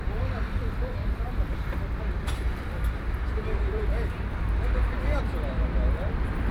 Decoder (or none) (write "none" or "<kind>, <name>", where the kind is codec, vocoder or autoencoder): vocoder, BigVGAN v2